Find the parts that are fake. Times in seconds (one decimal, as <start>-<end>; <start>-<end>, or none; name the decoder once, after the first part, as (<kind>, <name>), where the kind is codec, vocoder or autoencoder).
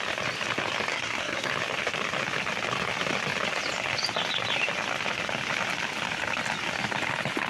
0.9-1.5 (codec, SNAC)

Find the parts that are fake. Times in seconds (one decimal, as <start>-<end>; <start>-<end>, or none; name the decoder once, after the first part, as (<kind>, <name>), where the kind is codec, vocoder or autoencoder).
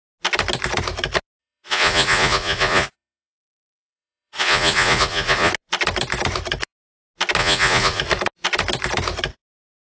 1.4-5.5 (vocoder, Vocos); 7.4-8.0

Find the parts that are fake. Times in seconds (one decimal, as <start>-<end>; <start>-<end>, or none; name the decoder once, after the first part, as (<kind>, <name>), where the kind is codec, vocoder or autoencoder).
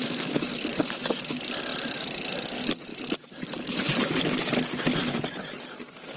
1.7-2.3 (vocoder, BigVGAN v2); 2.9-4.2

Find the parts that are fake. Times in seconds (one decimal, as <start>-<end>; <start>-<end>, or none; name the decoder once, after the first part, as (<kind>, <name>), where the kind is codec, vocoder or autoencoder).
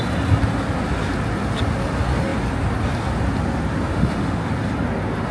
3.9-4.5 (autoencoder, DAC-VAE)